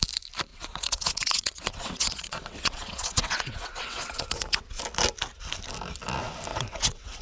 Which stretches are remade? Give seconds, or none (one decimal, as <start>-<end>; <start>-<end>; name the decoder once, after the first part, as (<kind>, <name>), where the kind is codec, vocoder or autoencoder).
0.5-4.8 (vocoder, WaveNeXt); 6.5-7.2